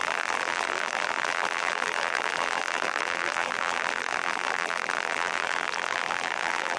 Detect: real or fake fake